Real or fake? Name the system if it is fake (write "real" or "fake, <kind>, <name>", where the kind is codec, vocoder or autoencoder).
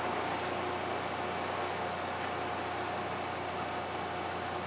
real